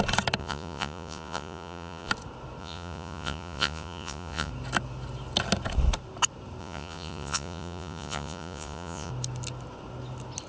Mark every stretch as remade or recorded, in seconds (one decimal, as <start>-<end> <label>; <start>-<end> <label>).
0.0-0.4 recorded; 0.4-2.1 remade; 2.1-2.6 recorded; 2.6-4.5 remade; 4.5-6.6 recorded; 6.6-9.1 remade; 9.1-10.5 recorded